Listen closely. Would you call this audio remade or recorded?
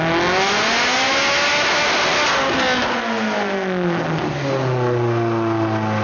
recorded